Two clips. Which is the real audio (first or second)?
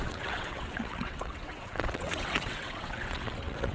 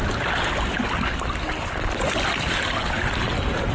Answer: second